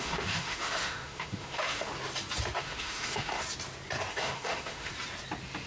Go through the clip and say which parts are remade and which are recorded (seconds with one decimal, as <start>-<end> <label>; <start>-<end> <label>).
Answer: 0.0-1.9 remade; 1.9-2.6 recorded; 2.6-3.4 remade; 3.4-4.1 recorded; 4.1-4.9 remade; 4.9-5.7 recorded